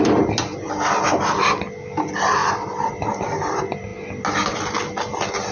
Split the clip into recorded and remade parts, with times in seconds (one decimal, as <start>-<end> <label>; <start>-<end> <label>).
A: 0.0-5.5 recorded